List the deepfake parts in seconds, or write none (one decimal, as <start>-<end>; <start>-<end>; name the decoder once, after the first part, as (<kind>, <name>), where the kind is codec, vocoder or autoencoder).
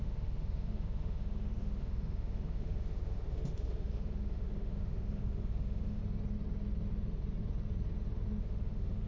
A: 0.0-6.0 (autoencoder, DAC-VAE); 8.4-9.1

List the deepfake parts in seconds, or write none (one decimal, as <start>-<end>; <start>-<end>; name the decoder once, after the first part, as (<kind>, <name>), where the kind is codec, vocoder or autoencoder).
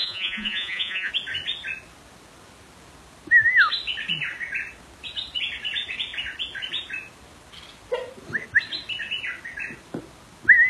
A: 0.0-1.1 (vocoder, Vocos)